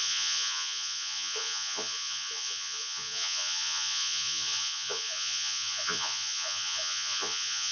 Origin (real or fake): fake